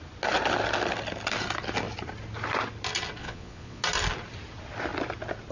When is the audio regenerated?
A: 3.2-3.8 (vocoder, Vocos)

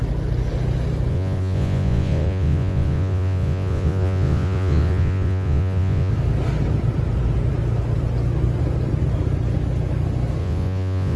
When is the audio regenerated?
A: 1.1-6.1 (vocoder, Vocos); 10.4-11.2

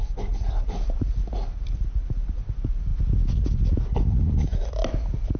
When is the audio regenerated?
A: none

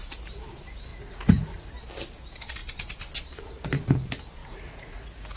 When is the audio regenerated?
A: 0.9-1.7 (vocoder, Vocos); 4.4-5.4

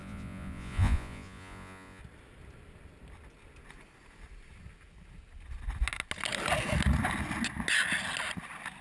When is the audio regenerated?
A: 0.0-2.0 (vocoder, Vocos)

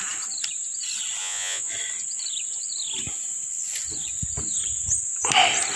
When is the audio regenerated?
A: 1.2-1.7 (vocoder, Vocos)

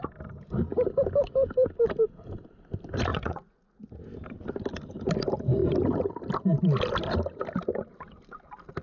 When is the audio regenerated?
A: 3.1-3.9 (vocoder, Vocos)

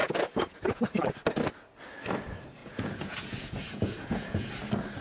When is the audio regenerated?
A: 0.0-0.8 (vocoder, Vocos); 2.6-4.5